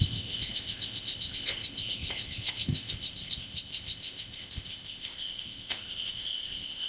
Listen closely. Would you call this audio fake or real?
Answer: fake